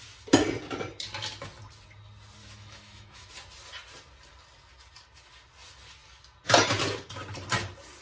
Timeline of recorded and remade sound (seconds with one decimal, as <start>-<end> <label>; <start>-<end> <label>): 0.0-2.4 recorded; 2.4-3.3 remade; 3.3-8.0 recorded